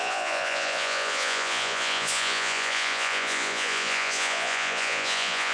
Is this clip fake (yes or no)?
yes